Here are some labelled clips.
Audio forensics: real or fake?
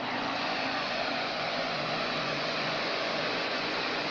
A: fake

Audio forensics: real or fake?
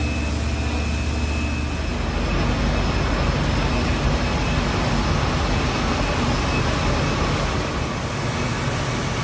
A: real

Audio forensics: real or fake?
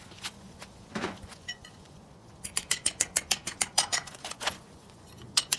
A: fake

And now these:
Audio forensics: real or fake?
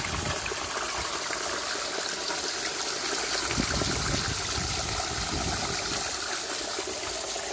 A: real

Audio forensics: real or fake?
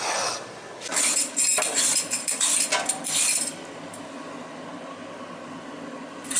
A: real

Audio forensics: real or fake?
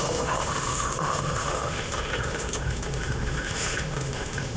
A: fake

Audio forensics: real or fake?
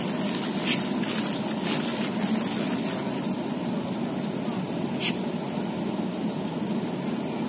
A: real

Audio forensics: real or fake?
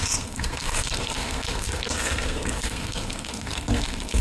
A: fake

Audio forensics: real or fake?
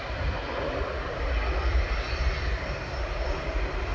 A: real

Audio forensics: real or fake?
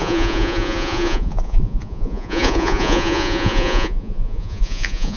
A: fake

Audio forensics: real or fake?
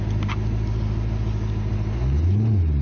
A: real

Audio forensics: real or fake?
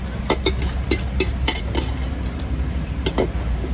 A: real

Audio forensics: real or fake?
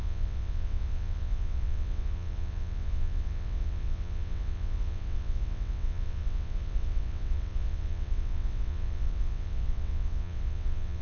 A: fake